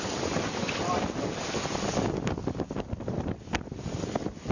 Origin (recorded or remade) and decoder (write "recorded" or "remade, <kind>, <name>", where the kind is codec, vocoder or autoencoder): recorded